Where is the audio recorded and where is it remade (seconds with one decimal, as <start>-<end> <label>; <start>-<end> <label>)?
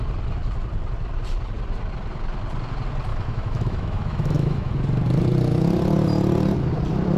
0.0-3.1 recorded; 3.1-4.7 remade; 4.7-7.2 recorded